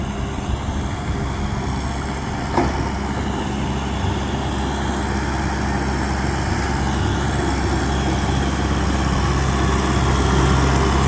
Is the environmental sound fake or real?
real